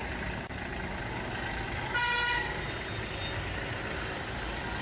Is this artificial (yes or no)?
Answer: no